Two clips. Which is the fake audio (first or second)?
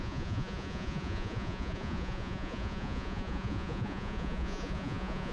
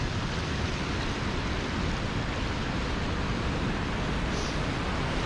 first